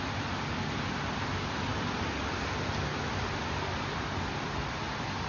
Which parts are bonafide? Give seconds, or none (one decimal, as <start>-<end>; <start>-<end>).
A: 0.0-5.3